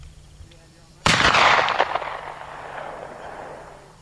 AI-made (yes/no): yes